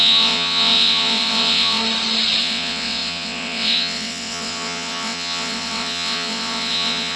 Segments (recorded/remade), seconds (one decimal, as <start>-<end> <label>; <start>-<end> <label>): 0.0-1.8 remade; 1.8-2.4 recorded; 2.4-7.2 remade